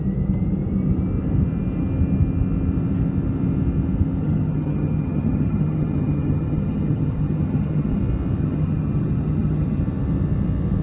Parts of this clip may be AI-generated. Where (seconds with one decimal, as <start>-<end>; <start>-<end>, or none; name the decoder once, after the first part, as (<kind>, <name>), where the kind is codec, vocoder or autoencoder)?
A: 4.2-8.0 (vocoder, HiFi-GAN); 8.4-9.8